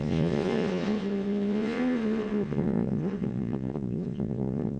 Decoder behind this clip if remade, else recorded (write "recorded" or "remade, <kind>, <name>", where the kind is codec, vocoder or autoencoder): remade, vocoder, Vocos